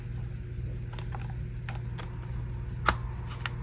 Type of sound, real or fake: real